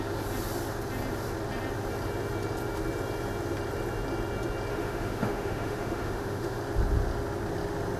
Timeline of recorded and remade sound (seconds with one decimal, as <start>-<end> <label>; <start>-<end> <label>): 0.0-4.7 recorded; 4.7-6.6 remade; 6.6-8.0 recorded